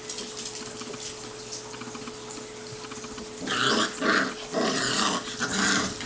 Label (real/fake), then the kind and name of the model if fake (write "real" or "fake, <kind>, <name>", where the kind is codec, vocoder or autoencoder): fake, vocoder, BigVGAN v2